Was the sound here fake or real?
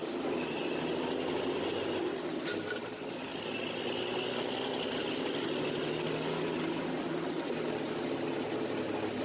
real